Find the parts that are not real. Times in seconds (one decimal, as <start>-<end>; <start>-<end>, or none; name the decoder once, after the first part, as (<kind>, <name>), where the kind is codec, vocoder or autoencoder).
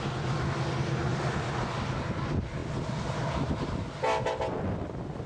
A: 1.1-1.8 (vocoder, BigVGAN v2)